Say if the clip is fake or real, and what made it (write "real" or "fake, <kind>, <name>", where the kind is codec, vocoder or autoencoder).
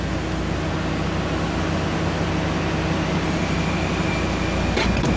real